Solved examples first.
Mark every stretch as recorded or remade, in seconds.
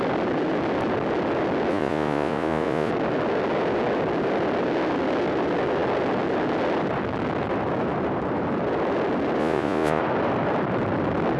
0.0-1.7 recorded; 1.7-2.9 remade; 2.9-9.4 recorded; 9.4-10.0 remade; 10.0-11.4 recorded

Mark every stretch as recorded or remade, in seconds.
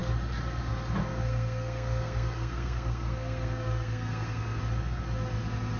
0.0-1.1 recorded; 1.1-4.6 remade; 4.6-5.8 recorded